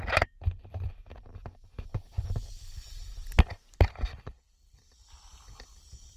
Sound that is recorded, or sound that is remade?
recorded